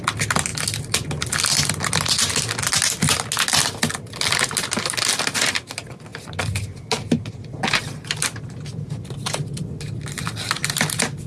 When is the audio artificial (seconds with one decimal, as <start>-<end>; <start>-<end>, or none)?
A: none